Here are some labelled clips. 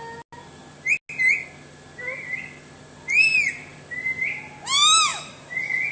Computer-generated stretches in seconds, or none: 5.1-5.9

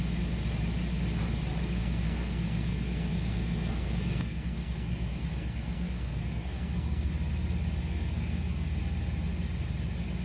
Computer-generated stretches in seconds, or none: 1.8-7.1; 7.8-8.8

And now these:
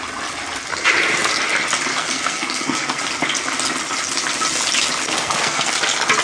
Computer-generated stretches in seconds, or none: 1.9-3.0; 5.0-5.7